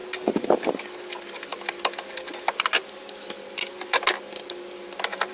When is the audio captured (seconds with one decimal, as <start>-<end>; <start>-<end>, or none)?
0.0-5.3